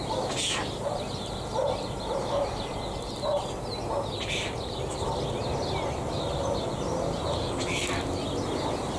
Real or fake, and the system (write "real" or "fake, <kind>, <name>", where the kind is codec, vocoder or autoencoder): real